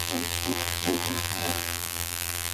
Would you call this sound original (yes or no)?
no